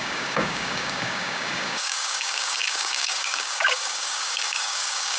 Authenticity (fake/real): fake